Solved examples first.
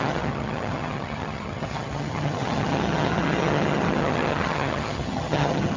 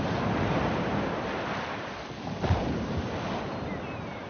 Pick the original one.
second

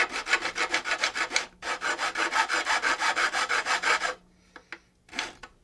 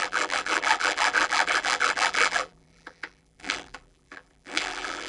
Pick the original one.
first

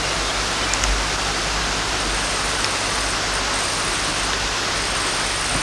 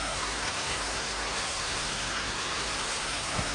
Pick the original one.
first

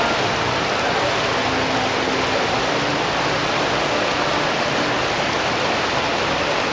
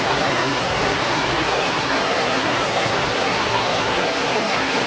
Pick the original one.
first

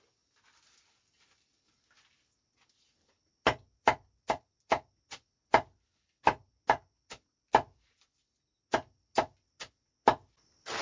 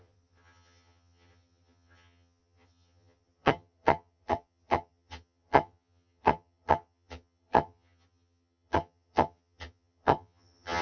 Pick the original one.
first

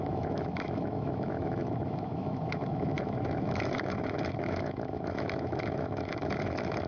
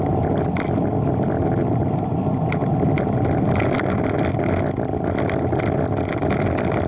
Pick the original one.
second